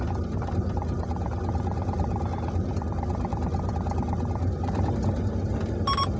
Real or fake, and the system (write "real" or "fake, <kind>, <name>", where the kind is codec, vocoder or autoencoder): real